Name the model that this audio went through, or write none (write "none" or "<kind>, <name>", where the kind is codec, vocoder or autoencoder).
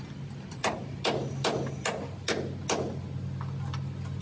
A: none